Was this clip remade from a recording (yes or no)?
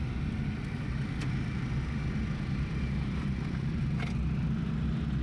no